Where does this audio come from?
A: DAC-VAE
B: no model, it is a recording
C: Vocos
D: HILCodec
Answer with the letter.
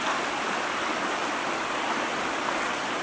B